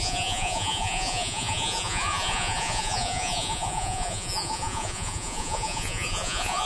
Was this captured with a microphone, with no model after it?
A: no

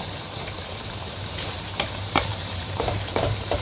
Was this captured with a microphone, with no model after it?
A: no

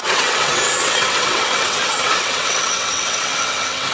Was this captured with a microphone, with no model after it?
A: no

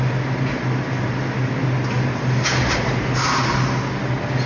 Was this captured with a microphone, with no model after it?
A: yes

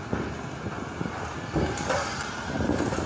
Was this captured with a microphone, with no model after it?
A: yes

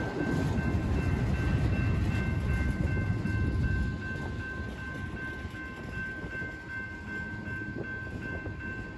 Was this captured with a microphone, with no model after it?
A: yes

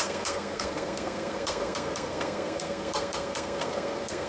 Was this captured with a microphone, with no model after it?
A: no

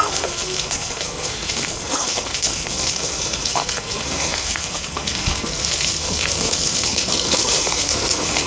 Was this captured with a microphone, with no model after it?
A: no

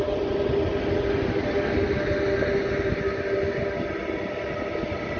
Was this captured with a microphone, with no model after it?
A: yes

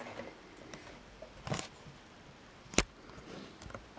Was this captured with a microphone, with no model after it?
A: yes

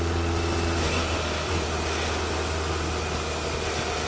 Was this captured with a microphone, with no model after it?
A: yes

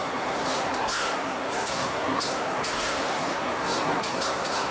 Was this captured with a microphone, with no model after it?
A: no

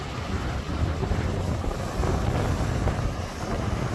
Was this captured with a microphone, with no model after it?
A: yes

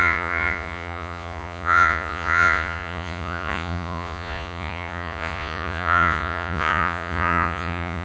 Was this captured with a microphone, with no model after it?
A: no